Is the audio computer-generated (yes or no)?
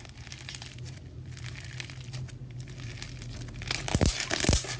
no